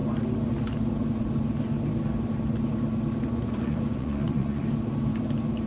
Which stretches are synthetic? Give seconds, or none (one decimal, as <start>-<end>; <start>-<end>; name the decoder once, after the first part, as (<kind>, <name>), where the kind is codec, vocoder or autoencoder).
3.3-4.6 (vocoder, Vocos)